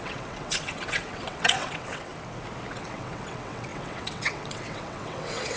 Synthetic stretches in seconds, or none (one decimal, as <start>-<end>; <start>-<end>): 0.0-2.1; 2.7-5.6